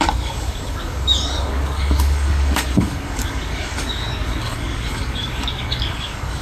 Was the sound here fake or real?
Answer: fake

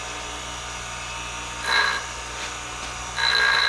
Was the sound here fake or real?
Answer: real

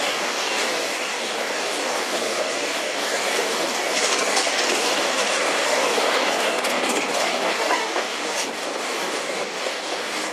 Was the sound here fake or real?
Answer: fake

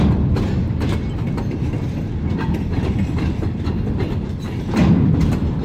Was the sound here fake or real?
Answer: real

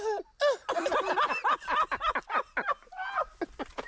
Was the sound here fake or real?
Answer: real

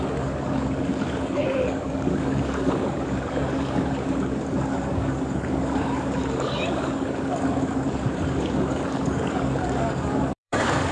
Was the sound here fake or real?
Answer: fake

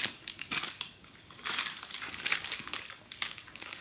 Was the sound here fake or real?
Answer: fake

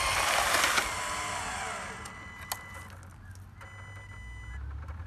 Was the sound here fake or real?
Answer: real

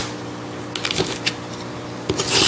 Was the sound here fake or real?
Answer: real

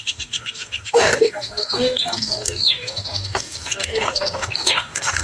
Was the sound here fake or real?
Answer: fake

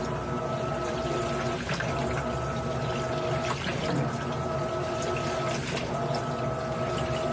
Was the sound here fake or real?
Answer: real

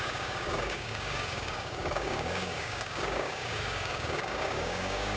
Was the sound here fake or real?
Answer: fake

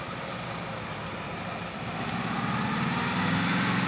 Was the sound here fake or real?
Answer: real